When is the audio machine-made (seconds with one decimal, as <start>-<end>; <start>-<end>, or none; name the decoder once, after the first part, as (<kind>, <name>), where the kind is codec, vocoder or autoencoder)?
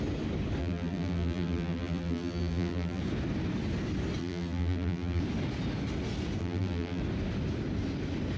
0.6-3.0 (vocoder, BigVGAN v2); 4.2-5.2; 6.4-7.0